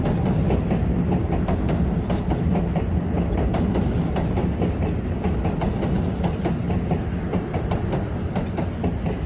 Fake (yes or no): no